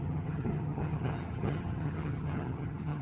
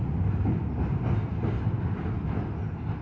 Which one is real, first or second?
second